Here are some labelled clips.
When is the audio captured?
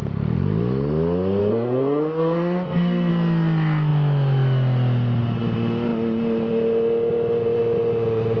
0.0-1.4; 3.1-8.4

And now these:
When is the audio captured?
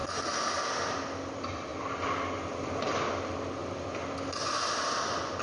0.0-5.4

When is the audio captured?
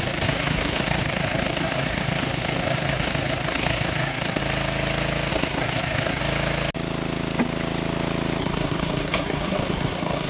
4.4-5.3; 6.2-8.4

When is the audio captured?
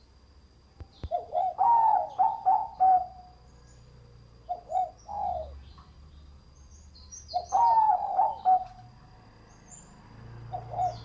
0.0-11.0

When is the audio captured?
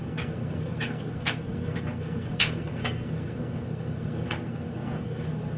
none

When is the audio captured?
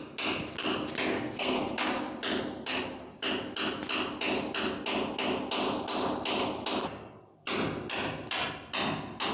0.0-1.1; 1.6-9.3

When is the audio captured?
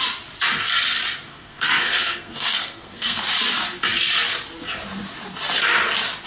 0.0-1.3; 3.2-6.3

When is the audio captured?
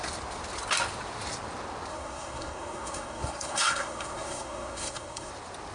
0.0-1.9; 5.3-5.7